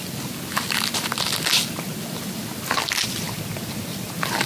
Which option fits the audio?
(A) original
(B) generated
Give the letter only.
A